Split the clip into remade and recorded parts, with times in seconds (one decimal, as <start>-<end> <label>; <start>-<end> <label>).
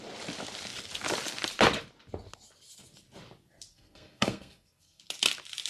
0.0-3.7 recorded; 3.7-5.0 remade; 5.0-5.7 recorded